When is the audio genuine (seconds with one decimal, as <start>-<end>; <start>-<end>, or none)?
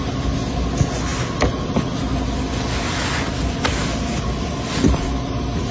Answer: 0.0-5.7